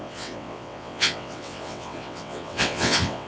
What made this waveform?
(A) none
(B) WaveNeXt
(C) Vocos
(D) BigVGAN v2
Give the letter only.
B